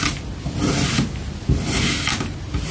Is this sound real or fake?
real